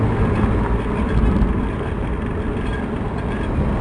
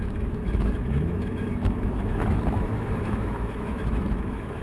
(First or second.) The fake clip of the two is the second